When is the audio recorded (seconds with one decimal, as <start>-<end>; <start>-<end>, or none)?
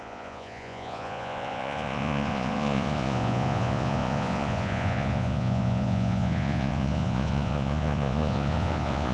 none